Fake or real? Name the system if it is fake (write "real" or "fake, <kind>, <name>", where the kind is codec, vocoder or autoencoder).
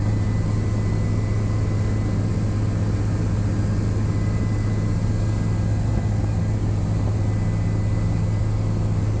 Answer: real